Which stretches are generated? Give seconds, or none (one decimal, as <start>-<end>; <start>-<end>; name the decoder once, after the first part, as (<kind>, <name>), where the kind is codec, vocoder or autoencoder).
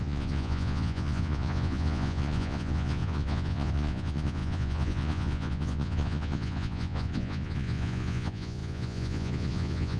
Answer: 0.0-10.0 (vocoder, Vocos)